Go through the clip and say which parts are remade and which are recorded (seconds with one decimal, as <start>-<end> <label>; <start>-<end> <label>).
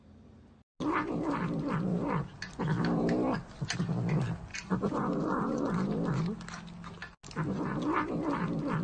0.0-4.5 recorded; 4.5-5.7 remade; 5.7-8.8 recorded